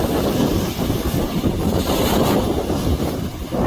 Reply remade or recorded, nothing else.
recorded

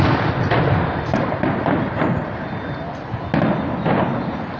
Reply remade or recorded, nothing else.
recorded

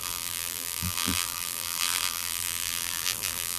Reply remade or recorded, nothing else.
remade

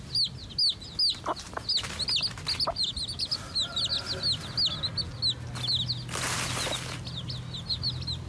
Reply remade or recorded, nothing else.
recorded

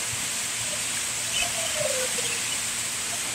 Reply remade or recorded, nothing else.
recorded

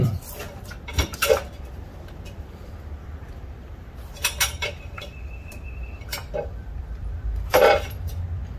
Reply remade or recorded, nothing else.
remade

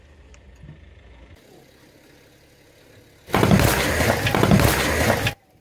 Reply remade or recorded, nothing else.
recorded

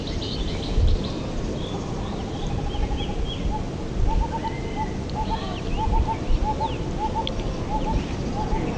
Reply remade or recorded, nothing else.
recorded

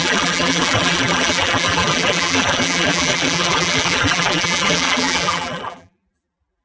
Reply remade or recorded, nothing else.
remade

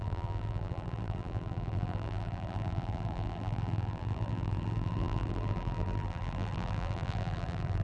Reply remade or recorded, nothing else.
remade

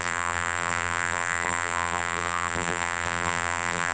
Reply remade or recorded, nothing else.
remade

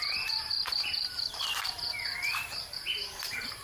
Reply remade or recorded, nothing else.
remade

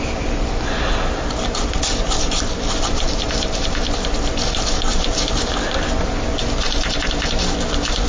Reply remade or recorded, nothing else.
recorded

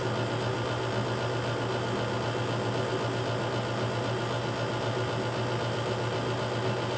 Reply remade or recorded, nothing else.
recorded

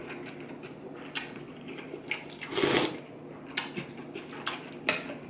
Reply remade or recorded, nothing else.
recorded